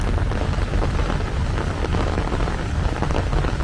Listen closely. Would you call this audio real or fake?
real